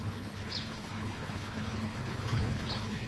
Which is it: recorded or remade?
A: remade